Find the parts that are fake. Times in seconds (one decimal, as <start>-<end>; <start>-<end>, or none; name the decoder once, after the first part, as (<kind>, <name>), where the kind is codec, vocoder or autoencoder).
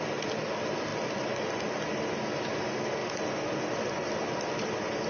0.9-1.7 (vocoder, BigVGAN v2)